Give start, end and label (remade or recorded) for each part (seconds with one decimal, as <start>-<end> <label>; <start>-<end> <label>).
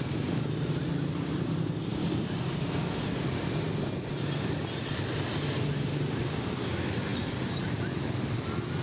0.0-7.1 recorded; 7.1-7.7 remade; 7.7-8.8 recorded